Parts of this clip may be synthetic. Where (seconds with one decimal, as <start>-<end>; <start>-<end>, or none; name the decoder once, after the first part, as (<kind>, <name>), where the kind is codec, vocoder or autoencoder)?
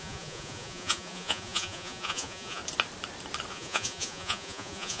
0.0-2.6 (vocoder, Vocos); 3.5-5.0